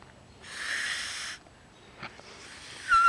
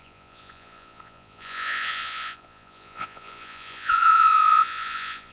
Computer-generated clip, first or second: second